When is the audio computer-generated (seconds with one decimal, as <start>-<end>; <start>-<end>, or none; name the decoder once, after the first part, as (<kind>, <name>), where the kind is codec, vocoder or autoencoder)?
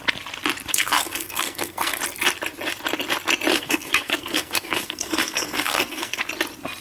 0.7-2.0 (codec, SNAC); 3.5-6.2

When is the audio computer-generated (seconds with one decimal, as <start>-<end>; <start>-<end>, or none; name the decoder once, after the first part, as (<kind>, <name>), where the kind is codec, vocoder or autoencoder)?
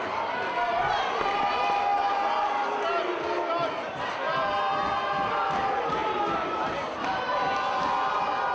none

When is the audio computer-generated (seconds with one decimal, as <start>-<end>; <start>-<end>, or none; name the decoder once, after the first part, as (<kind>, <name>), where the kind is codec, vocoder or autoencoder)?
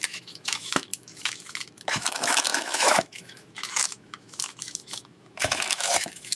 0.0-6.3 (autoencoder, DAC-VAE)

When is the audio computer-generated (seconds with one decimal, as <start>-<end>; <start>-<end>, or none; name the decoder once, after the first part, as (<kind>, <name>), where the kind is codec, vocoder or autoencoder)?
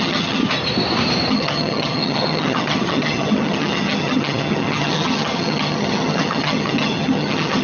0.0-0.4 (vocoder, HiFi-GAN); 1.3-7.6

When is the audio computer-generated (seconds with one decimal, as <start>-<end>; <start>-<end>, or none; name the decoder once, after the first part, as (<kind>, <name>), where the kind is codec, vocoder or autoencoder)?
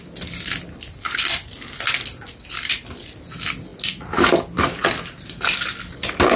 none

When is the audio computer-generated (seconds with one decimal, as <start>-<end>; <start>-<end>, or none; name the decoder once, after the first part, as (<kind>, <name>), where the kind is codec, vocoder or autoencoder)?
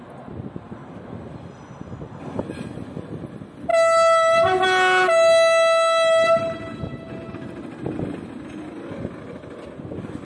none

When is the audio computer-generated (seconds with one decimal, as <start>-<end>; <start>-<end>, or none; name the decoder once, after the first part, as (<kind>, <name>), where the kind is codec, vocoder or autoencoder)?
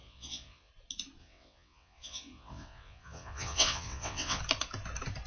0.0-0.7 (vocoder, WaveNeXt); 1.2-4.4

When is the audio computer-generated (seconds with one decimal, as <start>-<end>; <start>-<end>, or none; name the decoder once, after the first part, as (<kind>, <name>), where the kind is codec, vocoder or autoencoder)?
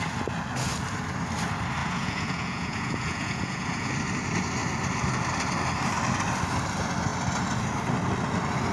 1.8-3.9 (vocoder, Vocos)